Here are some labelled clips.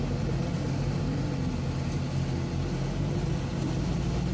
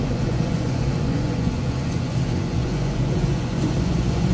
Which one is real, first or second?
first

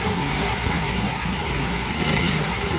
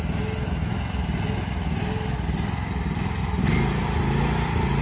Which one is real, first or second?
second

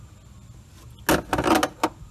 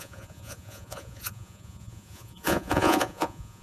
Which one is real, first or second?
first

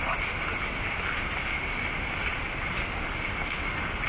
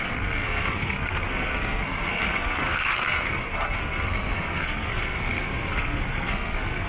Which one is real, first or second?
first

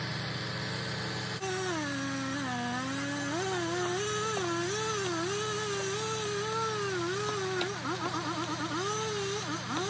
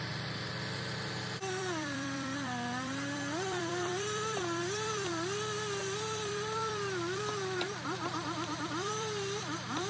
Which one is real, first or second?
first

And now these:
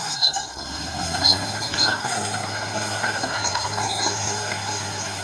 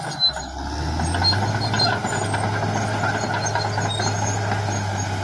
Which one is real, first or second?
second